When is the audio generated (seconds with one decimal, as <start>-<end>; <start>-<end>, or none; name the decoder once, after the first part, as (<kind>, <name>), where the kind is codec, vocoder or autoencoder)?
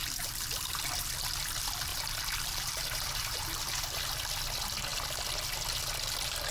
0.0-1.0 (vocoder, BigVGAN v2); 1.9-4.0